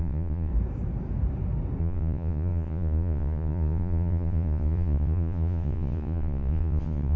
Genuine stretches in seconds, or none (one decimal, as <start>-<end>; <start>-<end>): 0.5-1.8